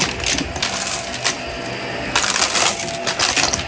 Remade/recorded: recorded